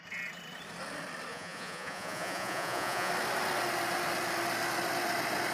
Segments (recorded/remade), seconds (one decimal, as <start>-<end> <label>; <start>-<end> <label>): 0.0-1.3 recorded; 1.3-3.1 remade; 3.1-5.5 recorded